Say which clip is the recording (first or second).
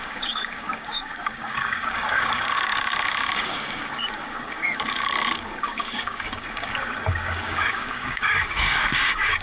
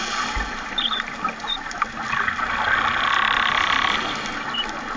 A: second